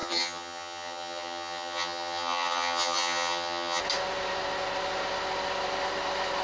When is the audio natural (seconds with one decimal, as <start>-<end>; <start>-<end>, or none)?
3.8-6.4